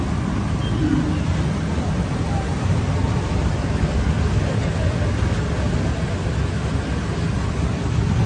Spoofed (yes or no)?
no